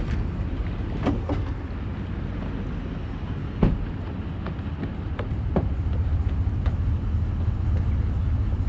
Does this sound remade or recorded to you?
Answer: recorded